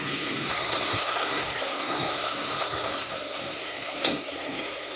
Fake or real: fake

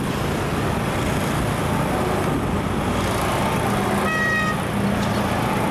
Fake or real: real